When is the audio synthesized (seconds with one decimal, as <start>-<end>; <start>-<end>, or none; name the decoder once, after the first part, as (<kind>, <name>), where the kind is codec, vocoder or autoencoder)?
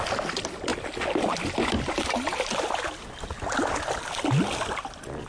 none